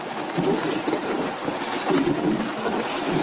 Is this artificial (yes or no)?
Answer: no